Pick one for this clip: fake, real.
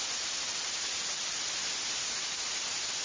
real